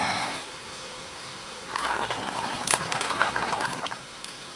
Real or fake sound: fake